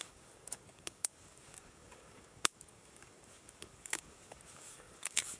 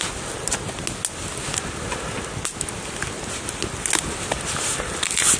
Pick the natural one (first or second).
second